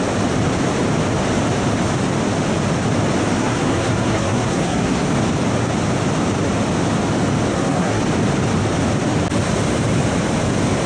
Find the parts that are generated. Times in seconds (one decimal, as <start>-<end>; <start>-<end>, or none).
3.4-5.1; 7.5-8.0